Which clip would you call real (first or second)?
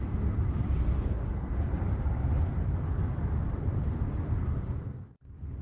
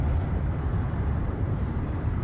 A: first